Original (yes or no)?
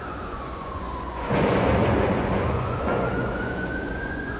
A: no